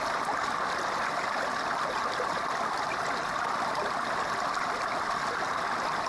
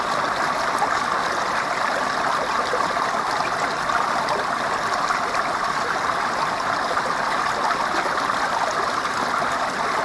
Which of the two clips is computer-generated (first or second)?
first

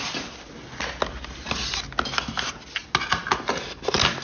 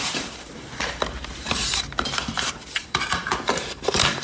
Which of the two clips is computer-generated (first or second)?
second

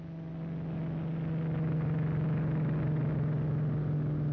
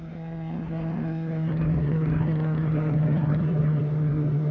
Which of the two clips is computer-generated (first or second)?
second